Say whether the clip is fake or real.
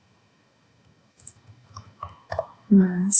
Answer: fake